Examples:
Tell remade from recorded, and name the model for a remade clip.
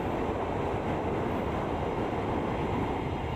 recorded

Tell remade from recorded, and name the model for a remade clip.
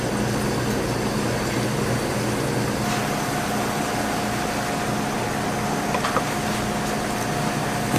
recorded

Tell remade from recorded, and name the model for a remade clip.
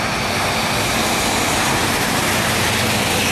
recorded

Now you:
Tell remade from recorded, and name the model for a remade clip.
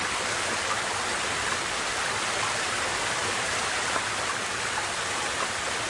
remade, vocoder, BigVGAN v2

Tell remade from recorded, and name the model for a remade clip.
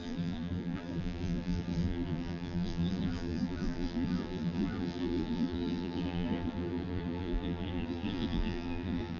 remade, vocoder, BigVGAN v2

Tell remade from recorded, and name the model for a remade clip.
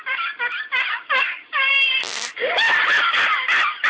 remade, vocoder, BigVGAN v2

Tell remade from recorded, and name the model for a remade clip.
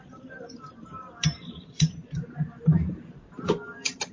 remade, vocoder, BigVGAN v2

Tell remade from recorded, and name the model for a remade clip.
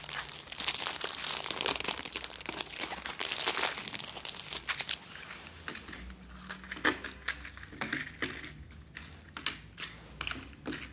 recorded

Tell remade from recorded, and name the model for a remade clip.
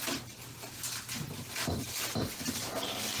recorded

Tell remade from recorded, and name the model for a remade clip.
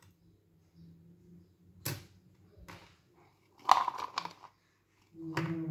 recorded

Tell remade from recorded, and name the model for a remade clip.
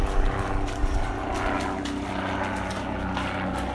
recorded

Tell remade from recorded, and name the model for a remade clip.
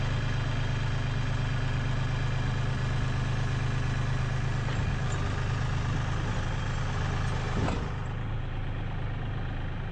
recorded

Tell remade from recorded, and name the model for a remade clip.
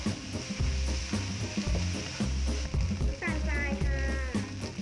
recorded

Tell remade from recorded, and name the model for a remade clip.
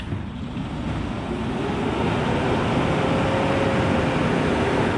recorded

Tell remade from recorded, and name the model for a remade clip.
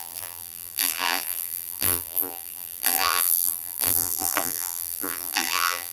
remade, vocoder, BigVGAN v2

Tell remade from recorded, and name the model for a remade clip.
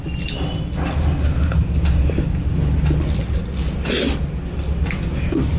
recorded